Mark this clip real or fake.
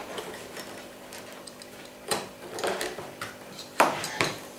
fake